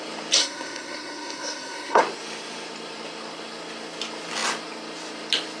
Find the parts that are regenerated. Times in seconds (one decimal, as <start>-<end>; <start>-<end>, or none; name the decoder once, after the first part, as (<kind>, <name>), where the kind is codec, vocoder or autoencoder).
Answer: 0.4-2.0 (codec, SNAC)